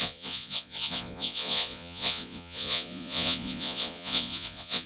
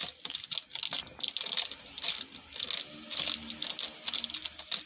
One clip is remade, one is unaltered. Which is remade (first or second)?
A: first